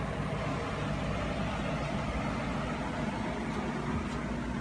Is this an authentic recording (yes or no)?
yes